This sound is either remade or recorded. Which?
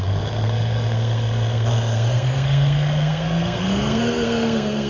remade